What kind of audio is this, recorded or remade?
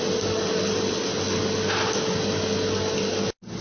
recorded